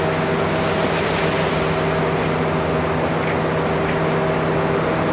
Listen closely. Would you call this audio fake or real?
real